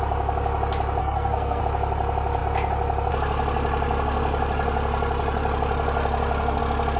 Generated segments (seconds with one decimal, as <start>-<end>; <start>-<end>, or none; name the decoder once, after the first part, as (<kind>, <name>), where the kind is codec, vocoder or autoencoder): 1.0-1.6 (codec, SNAC)